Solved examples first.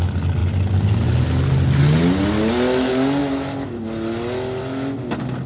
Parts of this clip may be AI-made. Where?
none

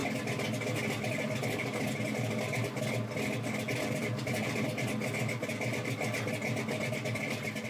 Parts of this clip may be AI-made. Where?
none

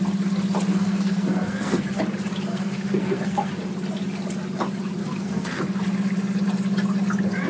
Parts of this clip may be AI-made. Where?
0.7-2.0 (codec, SNAC); 2.5-3.5; 5.0-5.6

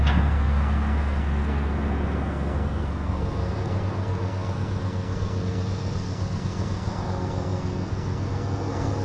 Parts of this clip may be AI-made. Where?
0.0-9.0 (codec, SNAC)

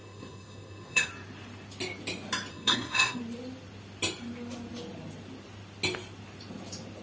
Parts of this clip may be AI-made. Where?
0.0-1.1 (codec, SNAC); 2.5-3.2